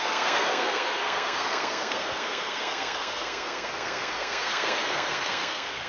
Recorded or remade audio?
remade